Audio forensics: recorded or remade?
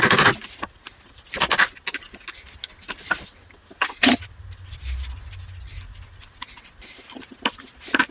recorded